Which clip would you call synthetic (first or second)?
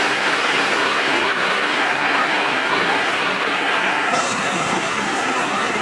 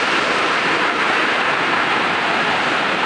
first